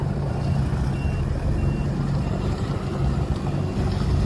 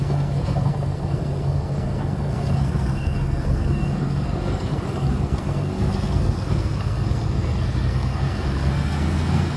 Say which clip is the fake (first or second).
second